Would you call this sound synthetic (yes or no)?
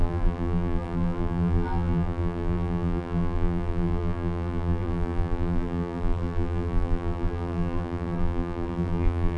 yes